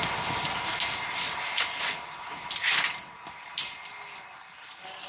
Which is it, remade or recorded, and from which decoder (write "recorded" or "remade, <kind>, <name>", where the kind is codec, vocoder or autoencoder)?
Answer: recorded